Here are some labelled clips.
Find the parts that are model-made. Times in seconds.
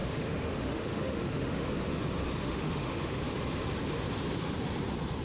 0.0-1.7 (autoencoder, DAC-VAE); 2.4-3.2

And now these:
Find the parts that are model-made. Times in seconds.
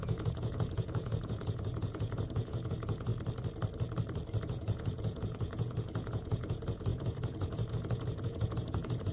0.0-3.1 (vocoder, Vocos); 4.4-9.1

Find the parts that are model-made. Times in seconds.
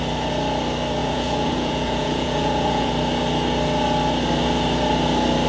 1.0-2.9 (vocoder, Vocos)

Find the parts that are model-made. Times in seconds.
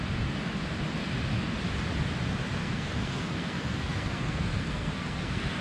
2.6-5.6 (codec, SNAC)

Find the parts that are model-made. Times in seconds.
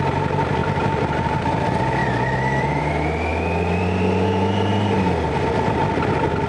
0.6-1.4 (vocoder, BigVGAN v2); 2.0-2.9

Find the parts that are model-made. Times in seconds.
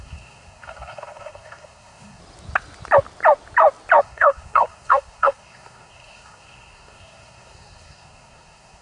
0.0-2.2 (codec, SNAC); 4.0-8.8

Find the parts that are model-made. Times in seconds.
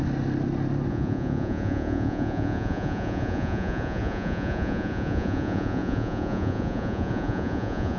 0.9-8.0 (vocoder, Vocos)